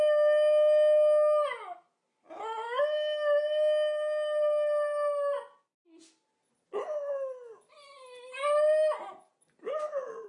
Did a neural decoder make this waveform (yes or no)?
no